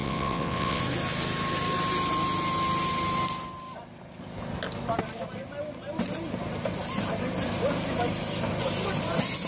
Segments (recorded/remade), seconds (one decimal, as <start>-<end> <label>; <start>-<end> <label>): 0.0-0.8 remade; 0.8-9.5 recorded